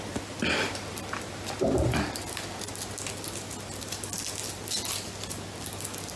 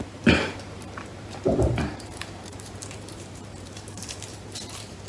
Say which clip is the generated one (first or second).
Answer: second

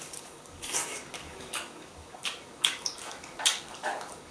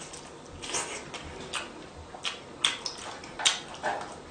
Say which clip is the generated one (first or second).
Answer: first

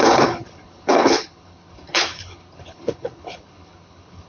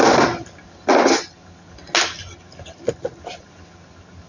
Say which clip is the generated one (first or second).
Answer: first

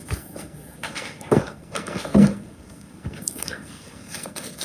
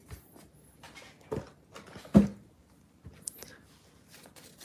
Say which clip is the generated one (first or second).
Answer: first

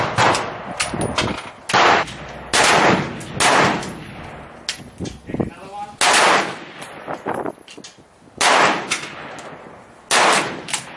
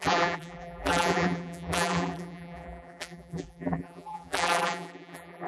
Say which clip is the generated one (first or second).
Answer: second